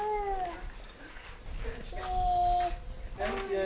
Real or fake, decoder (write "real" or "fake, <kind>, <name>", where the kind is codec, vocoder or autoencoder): real